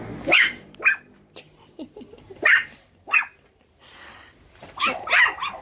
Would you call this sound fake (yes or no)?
no